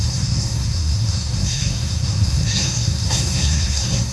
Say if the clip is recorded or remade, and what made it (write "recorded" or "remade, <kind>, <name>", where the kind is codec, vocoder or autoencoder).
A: remade, codec, SNAC